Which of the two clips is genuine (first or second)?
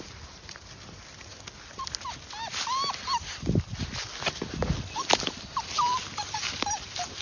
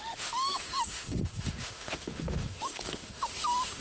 first